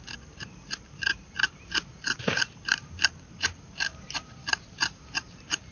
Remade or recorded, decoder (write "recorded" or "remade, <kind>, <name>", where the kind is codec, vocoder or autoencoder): remade, vocoder, BigVGAN v2